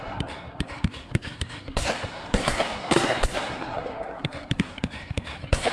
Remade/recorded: remade